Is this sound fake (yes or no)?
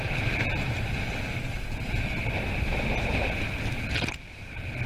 no